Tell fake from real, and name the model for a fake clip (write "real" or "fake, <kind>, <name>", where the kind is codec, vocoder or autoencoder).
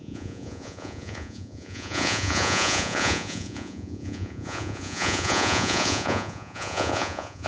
fake, vocoder, Vocos